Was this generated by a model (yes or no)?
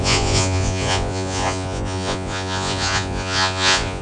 yes